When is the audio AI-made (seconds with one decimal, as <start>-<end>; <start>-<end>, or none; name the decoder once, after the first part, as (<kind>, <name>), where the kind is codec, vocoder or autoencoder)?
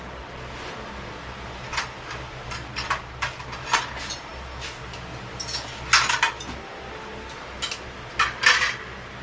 none